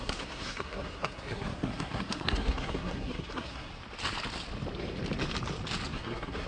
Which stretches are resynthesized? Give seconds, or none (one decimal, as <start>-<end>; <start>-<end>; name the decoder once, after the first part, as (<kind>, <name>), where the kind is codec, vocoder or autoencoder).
0.0-3.7 (codec, SNAC); 5.9-6.5